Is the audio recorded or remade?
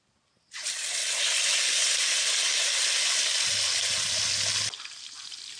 recorded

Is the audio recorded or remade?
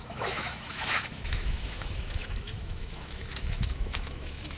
remade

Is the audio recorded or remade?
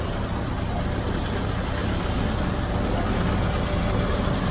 recorded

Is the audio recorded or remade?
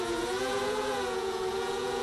remade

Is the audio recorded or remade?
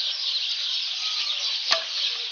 recorded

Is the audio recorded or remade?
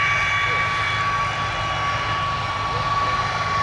recorded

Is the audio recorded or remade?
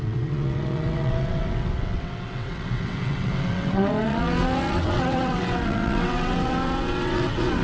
remade